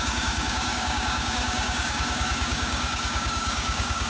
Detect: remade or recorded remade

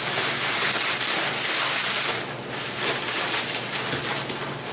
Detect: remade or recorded recorded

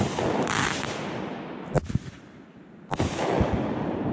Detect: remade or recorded recorded